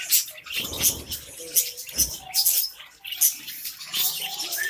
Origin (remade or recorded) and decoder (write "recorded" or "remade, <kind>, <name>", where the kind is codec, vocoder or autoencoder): recorded